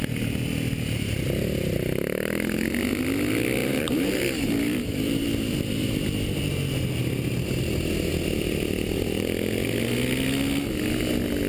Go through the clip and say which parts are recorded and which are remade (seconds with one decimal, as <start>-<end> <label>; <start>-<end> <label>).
0.0-3.6 recorded; 3.6-6.0 remade; 6.0-11.5 recorded